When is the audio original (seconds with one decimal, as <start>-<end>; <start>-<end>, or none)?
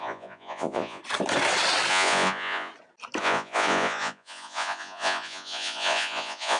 1.0-1.9; 2.7-3.2